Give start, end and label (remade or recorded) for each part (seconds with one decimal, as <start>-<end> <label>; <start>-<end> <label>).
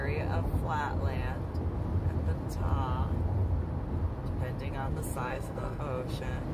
0.0-5.3 recorded; 5.3-5.8 remade; 5.8-6.5 recorded